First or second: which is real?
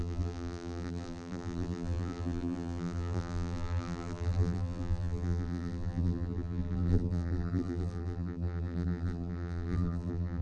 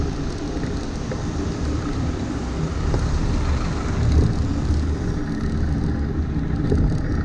second